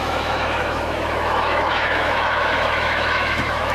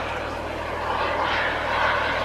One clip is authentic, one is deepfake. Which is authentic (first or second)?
second